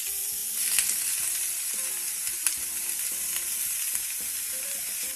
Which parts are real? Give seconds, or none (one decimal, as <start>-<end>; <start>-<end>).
none